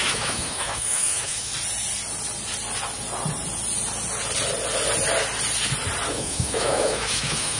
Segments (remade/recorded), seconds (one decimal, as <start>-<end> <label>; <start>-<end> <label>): 0.0-1.5 remade; 1.5-6.1 recorded; 6.1-7.6 remade